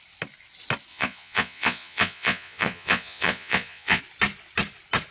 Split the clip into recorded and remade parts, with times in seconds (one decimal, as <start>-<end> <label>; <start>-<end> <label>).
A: 0.0-0.9 recorded; 0.9-4.0 remade; 4.0-5.1 recorded